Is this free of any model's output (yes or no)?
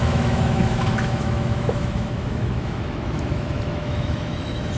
no